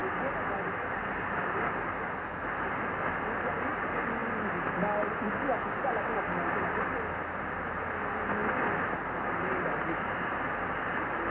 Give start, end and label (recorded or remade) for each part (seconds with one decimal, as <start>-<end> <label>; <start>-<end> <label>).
0.0-11.3 recorded